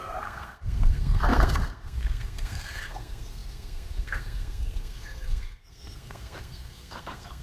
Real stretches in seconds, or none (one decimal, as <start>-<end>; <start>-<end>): none